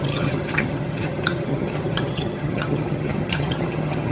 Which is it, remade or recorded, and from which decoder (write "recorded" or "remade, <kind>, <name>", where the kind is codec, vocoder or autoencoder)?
remade, vocoder, HiFi-GAN